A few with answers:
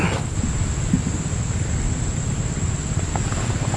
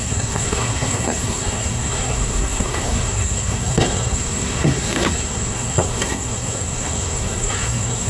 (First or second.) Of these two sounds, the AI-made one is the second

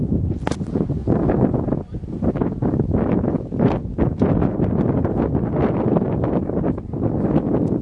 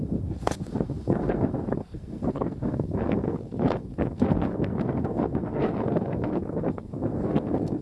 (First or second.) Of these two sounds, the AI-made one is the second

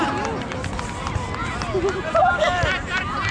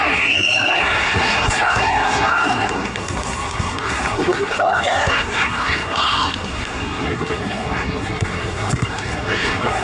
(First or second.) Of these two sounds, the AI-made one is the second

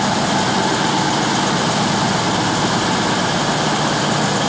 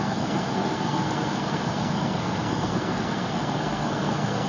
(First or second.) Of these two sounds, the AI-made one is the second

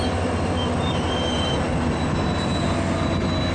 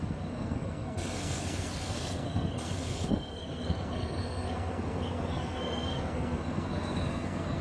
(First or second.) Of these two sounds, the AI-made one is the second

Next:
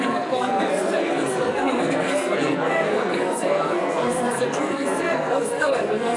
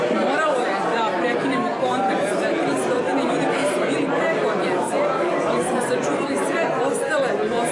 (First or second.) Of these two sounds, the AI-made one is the first